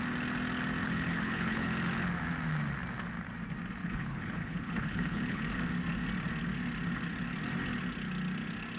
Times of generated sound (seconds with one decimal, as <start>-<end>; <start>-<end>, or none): 0.8-1.7; 3.8-5.4